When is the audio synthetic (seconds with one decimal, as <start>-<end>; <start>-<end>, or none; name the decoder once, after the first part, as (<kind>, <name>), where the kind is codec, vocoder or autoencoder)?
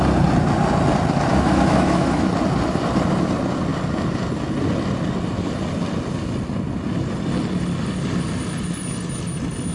1.3-2.3 (autoencoder, DAC-VAE)